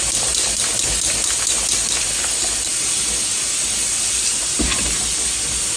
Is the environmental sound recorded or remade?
recorded